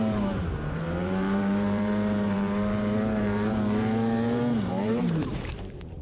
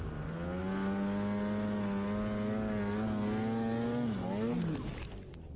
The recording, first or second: second